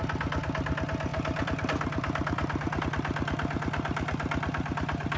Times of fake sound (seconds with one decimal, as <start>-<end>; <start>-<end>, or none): 1.1-2.8